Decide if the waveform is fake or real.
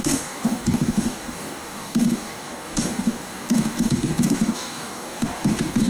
fake